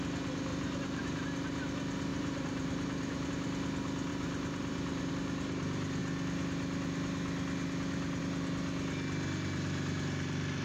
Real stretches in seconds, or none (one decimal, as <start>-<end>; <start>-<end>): 0.0-0.5; 1.2-2.1; 3.3-4.1; 5.1-10.6